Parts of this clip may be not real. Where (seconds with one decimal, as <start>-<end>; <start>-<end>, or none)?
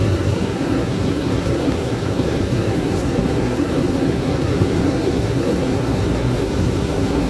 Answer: 0.0-7.3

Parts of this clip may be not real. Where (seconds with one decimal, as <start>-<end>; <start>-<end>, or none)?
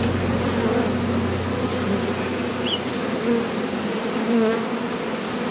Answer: none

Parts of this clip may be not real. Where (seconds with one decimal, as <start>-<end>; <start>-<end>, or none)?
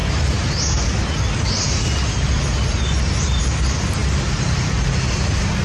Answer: none